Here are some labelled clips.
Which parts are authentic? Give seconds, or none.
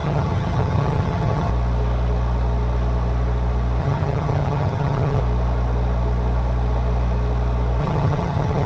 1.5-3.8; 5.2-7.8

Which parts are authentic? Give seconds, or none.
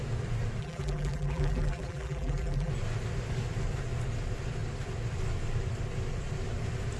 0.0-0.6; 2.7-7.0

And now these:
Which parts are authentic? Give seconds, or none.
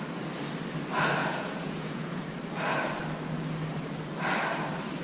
0.0-1.2; 2.4-5.0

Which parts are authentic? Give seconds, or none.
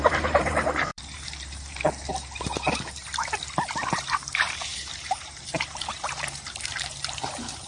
2.1-3.9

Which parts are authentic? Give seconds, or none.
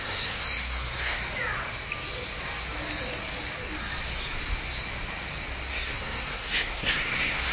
1.2-5.7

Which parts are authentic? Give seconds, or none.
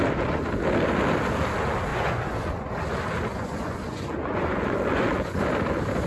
0.0-1.9; 2.8-3.3; 5.4-6.1